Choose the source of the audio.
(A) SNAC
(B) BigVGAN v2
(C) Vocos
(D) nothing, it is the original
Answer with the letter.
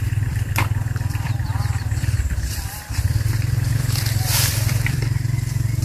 B